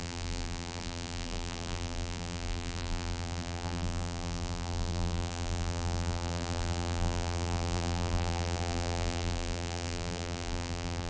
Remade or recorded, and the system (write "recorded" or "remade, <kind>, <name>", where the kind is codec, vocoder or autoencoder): remade, vocoder, BigVGAN v2